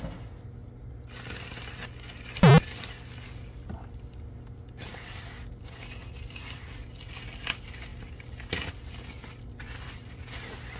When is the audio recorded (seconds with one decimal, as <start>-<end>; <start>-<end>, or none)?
0.0-10.8